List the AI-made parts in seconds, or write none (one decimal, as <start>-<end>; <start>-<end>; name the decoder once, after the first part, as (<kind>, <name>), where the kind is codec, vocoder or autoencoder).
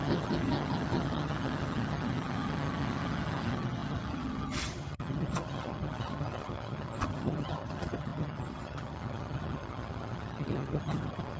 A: 0.0-11.4 (vocoder, HiFi-GAN)